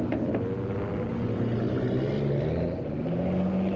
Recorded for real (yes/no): yes